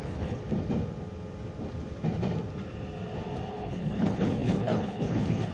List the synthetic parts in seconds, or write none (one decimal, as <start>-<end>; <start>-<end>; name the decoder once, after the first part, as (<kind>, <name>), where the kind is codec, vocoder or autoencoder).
0.0-0.4 (codec, HILCodec); 3.5-5.5